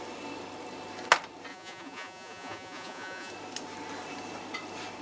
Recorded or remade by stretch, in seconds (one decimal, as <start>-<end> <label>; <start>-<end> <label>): 0.0-1.5 recorded; 1.5-3.3 remade; 3.3-5.0 recorded